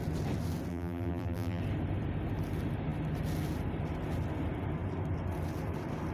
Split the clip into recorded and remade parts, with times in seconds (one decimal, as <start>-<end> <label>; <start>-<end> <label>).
0.0-0.7 recorded; 0.7-1.6 remade; 1.6-6.1 recorded